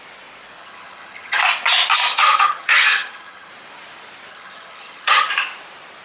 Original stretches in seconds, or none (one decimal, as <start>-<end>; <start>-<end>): 0.0-0.6; 1.4-2.1; 3.5-4.3; 5.3-6.0